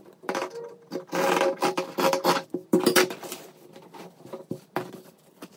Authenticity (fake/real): fake